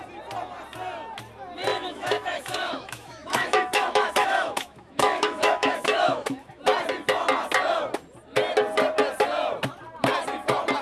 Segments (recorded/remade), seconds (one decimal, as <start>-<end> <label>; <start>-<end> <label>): 0.0-1.7 recorded; 1.7-6.6 remade; 6.6-10.8 recorded